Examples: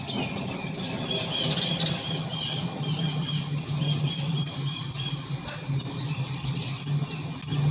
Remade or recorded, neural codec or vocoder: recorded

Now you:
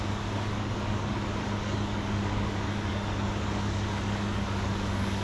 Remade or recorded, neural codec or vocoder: remade, codec, DAC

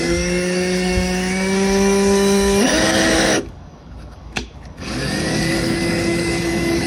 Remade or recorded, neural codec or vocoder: remade, codec, DAC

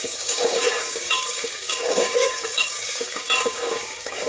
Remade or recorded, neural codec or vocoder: remade, codec, DAC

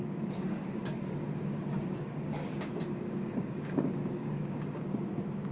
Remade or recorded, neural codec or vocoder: remade, codec, DAC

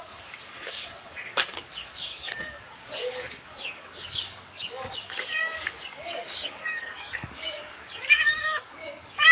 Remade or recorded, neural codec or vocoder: remade, codec, DAC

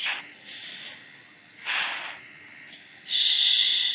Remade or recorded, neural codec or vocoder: recorded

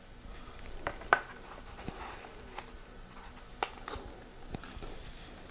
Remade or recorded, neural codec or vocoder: recorded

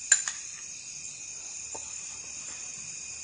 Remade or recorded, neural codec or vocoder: recorded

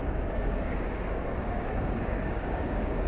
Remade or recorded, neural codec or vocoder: remade, codec, DAC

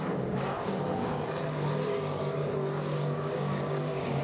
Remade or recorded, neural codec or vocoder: remade, codec, DAC